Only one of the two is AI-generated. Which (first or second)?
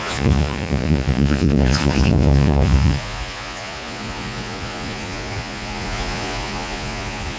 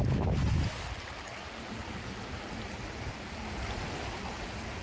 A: first